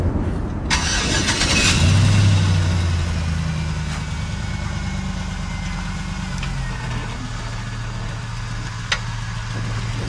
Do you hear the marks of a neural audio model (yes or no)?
no